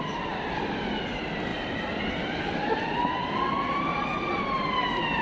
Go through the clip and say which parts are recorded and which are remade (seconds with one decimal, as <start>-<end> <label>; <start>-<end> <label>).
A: 0.0-1.5 recorded; 1.5-4.4 remade; 4.4-5.2 recorded